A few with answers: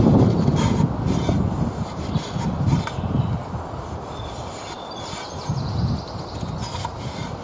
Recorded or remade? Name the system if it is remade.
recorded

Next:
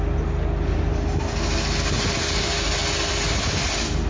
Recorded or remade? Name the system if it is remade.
recorded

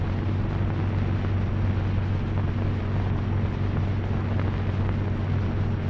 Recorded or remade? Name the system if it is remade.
recorded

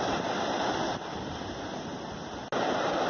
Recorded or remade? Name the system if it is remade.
recorded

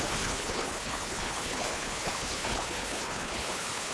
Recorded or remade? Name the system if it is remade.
remade, codec, HILCodec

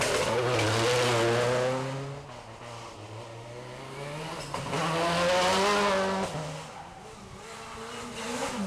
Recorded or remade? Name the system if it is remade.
recorded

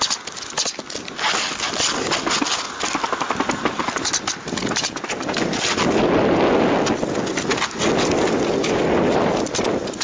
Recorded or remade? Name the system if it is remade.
recorded